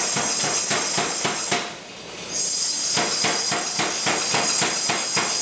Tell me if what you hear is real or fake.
real